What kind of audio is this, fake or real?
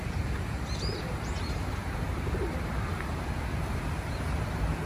fake